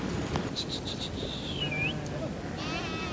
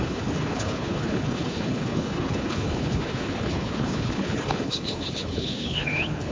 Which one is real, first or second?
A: first